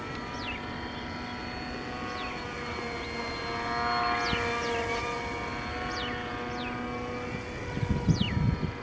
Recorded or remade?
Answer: recorded